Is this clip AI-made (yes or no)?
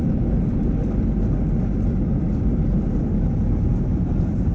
no